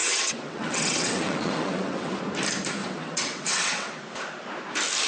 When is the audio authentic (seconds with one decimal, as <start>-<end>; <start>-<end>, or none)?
2.2-2.8; 4.0-5.1